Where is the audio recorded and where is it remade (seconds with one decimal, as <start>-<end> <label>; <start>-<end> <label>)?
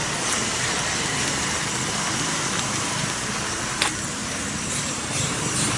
0.0-3.5 recorded; 3.5-4.2 remade; 4.2-4.7 recorded; 4.7-5.8 remade